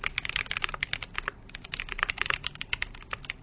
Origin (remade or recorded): recorded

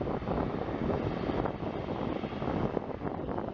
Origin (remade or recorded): remade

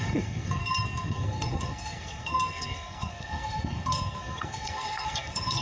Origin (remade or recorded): remade